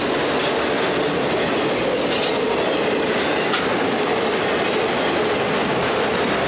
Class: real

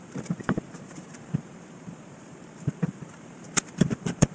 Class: fake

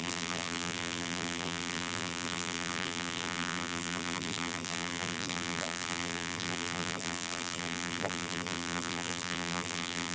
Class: fake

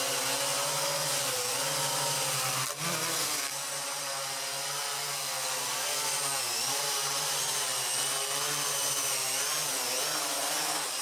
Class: fake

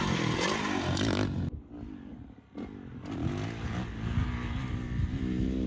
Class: real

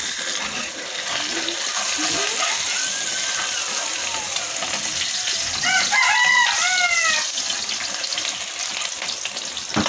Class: real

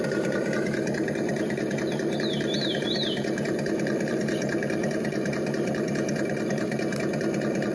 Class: fake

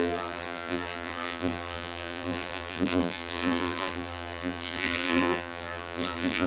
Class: fake